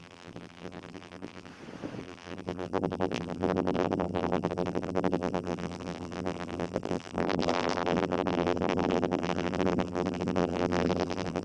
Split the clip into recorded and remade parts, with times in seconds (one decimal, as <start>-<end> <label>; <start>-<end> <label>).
0.0-1.5 remade; 1.5-2.0 recorded; 2.0-11.4 remade